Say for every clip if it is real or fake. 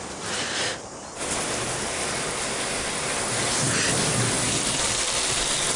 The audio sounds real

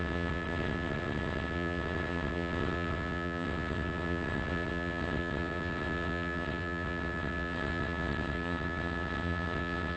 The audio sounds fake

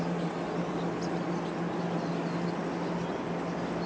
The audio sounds real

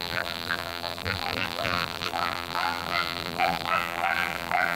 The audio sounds fake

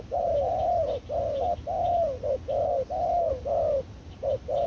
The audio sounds real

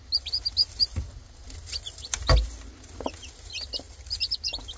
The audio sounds real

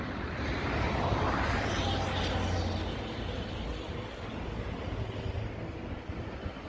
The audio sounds real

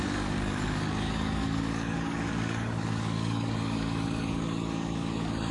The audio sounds fake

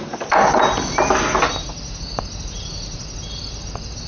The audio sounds real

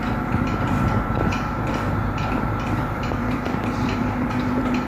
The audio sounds fake